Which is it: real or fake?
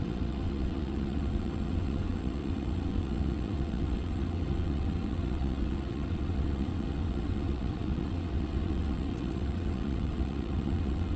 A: fake